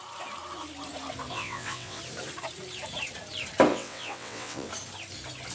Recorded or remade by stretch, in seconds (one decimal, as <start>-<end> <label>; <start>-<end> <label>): 0.0-1.3 recorded; 1.3-2.0 remade; 2.0-3.7 recorded; 3.7-4.7 remade; 4.7-5.5 recorded